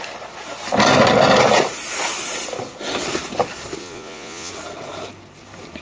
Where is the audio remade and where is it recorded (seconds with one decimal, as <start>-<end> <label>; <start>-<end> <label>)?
0.0-3.8 recorded; 3.8-4.5 remade; 4.5-5.8 recorded